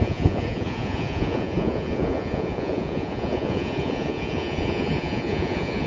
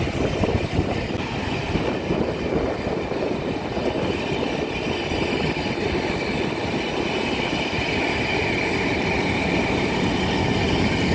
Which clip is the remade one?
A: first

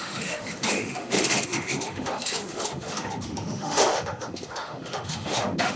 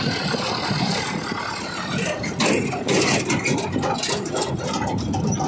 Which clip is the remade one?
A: first